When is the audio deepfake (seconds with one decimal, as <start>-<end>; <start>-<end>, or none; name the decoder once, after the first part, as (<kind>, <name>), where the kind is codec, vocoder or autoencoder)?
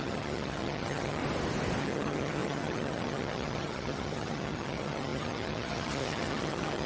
0.0-1.2 (vocoder, HiFi-GAN); 1.8-6.9